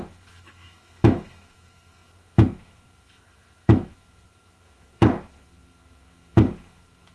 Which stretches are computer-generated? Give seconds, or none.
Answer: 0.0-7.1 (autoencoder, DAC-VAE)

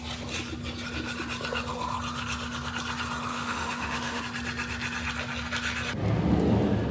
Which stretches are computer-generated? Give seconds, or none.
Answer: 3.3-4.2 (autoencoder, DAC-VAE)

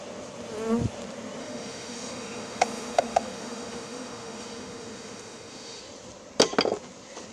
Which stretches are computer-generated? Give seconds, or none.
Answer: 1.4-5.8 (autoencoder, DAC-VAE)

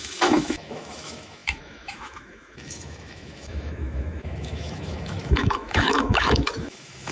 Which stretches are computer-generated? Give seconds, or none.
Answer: 0.0-7.1 (autoencoder, DAC-VAE)